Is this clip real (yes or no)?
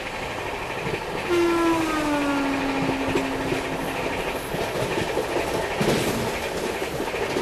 yes